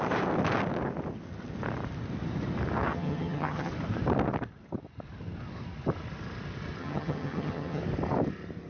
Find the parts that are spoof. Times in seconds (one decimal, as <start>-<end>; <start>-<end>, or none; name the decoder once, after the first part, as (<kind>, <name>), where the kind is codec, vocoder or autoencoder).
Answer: 2.9-3.7 (vocoder, HiFi-GAN); 6.8-7.8